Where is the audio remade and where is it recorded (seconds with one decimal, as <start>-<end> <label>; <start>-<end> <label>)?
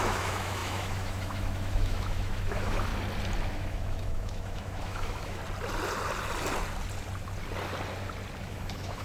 0.0-2.9 remade; 2.9-3.5 recorded; 3.5-5.4 remade; 5.4-8.4 recorded; 8.4-9.0 remade